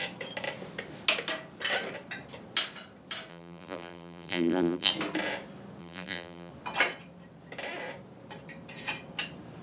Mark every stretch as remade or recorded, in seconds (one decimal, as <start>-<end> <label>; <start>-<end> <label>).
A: 0.0-3.3 recorded; 3.3-4.9 remade; 4.9-5.8 recorded; 5.8-6.5 remade; 6.5-9.6 recorded